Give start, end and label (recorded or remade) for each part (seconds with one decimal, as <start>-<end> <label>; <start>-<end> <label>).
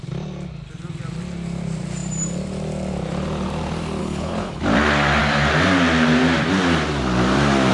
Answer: 0.0-4.0 recorded; 4.0-4.6 remade; 4.6-7.7 recorded